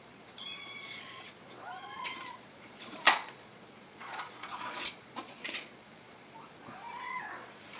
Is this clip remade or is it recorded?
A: remade